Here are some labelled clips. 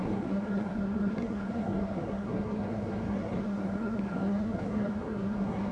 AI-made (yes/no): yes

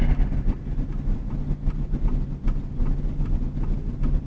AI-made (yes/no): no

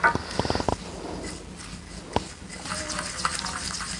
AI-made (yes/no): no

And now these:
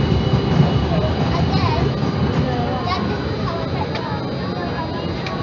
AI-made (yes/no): no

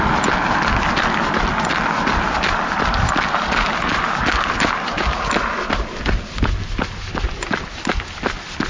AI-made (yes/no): no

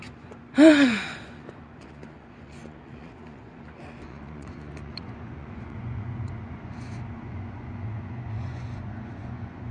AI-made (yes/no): yes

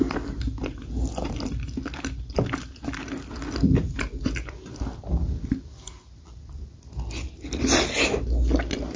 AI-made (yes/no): no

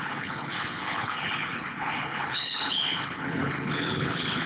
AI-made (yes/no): yes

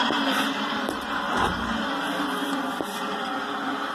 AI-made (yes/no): yes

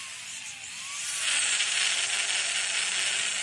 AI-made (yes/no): no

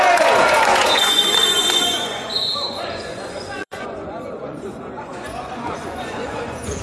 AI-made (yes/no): yes